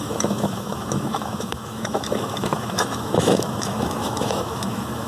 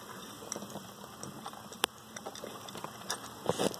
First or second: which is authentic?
second